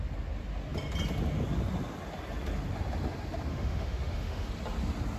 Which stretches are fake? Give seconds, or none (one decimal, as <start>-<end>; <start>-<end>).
3.5-4.5